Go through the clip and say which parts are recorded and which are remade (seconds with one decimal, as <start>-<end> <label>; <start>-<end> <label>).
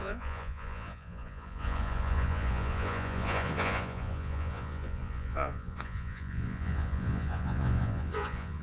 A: 0.0-8.6 remade